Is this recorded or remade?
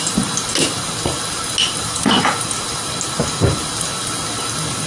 recorded